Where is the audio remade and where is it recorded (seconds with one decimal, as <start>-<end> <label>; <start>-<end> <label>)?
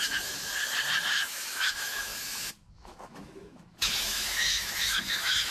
0.0-0.5 remade; 0.5-1.1 recorded; 1.1-5.5 remade